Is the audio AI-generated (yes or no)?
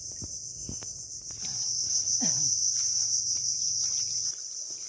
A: no